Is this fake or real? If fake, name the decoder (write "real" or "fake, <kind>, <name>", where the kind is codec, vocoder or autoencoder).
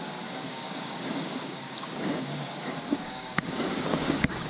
fake, codec, DAC